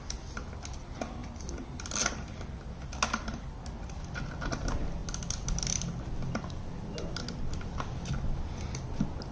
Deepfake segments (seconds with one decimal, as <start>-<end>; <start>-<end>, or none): none